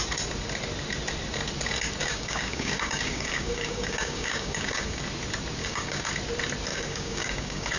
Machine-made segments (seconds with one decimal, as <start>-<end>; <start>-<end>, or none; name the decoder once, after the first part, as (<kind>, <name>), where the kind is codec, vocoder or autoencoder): 2.0-5.0 (codec, DAC); 5.6-6.1; 6.7-7.8